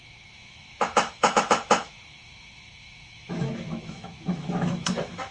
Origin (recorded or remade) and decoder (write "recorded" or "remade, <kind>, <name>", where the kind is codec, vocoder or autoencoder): remade, autoencoder, DAC-VAE